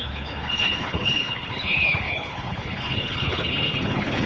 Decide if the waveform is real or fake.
fake